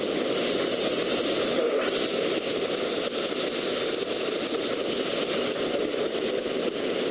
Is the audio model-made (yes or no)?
no